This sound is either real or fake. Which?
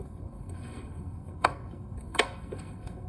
fake